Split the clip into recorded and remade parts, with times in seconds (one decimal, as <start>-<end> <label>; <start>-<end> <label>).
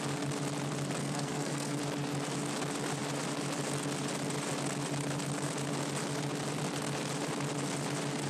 0.0-1.0 recorded; 1.0-1.8 remade; 1.8-8.3 recorded